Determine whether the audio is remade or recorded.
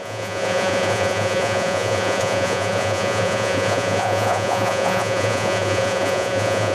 remade